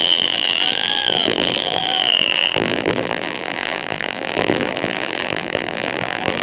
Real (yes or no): no